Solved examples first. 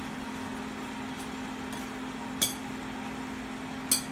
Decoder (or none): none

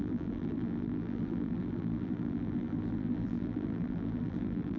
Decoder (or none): vocoder, BigVGAN v2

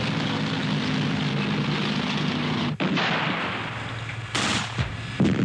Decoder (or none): none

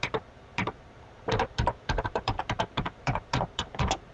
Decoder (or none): vocoder, BigVGAN v2